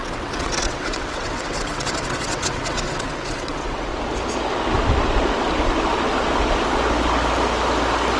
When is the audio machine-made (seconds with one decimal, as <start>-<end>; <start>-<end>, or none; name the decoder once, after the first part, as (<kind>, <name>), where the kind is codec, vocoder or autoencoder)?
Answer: 0.0-3.9 (vocoder, WaveNeXt)